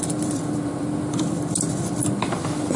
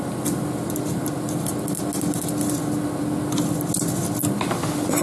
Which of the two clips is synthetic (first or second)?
first